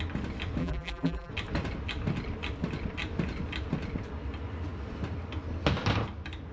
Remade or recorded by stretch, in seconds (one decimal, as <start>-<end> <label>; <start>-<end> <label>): 0.0-0.6 recorded; 0.6-1.3 remade; 1.3-6.5 recorded